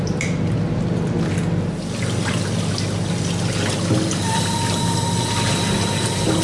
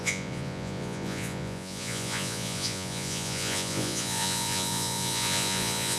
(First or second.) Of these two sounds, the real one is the first